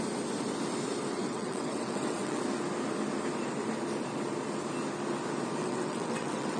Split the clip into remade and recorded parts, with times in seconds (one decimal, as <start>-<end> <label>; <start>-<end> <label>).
0.0-1.1 recorded; 1.1-2.4 remade; 2.4-5.6 recorded; 5.6-6.6 remade